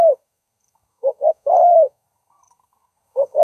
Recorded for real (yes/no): no